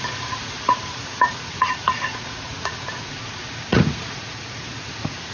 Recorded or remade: remade